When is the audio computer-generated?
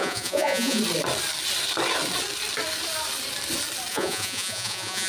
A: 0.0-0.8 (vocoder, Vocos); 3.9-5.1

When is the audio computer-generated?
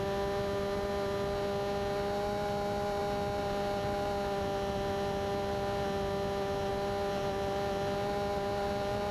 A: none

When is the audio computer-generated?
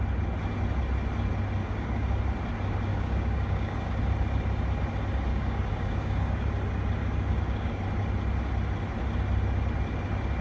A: 1.6-2.2 (codec, DAC); 2.9-3.9; 5.3-6.5; 7.0-7.8